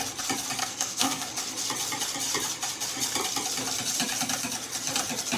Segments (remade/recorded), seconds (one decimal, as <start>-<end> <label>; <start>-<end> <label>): 0.0-0.6 recorded; 0.6-1.3 remade; 1.3-5.4 recorded